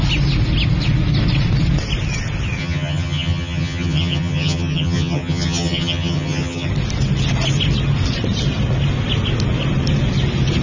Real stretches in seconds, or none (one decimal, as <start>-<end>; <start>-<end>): 0.0-2.6; 6.7-10.6